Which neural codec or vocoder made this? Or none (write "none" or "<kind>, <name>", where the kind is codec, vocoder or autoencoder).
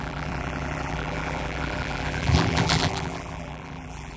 vocoder, BigVGAN v2